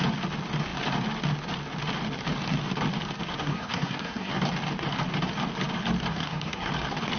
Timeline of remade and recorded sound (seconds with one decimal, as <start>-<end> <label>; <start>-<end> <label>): 0.0-3.4 recorded; 3.4-4.3 remade; 4.3-6.1 recorded; 6.1-6.7 remade; 6.7-7.2 recorded